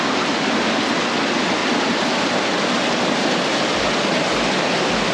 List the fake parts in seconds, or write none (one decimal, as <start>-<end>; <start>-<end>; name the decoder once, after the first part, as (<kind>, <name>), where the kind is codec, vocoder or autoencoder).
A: none